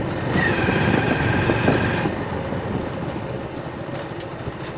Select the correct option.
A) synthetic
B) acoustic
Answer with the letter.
B